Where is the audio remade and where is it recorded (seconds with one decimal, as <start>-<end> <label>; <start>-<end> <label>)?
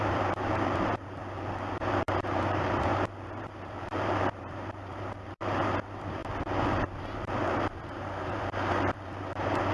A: 0.0-1.2 remade; 1.2-1.7 recorded; 1.7-6.2 remade; 6.2-6.8 recorded; 6.8-9.7 remade